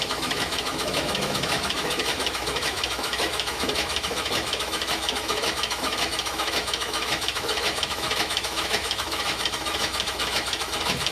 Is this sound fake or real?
fake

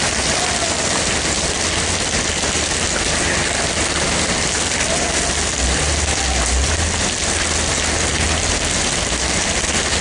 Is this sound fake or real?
real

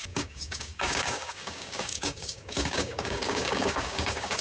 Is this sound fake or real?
fake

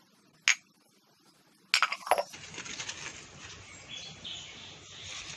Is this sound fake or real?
real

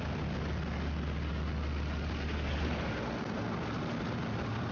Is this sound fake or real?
real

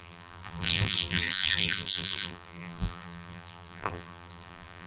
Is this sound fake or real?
fake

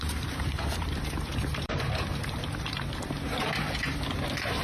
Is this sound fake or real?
fake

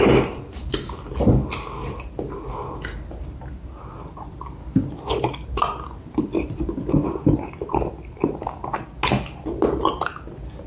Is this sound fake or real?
real